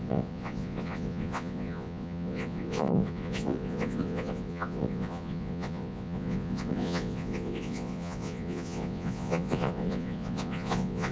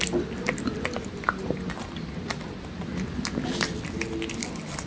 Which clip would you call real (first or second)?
second